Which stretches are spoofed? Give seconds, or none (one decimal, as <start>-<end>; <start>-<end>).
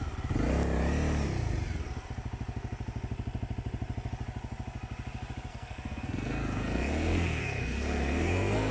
5.5-8.7